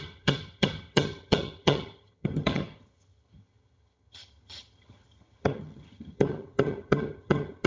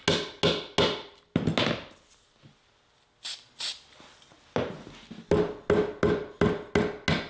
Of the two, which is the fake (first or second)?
first